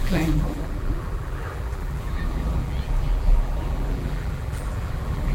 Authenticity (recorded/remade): remade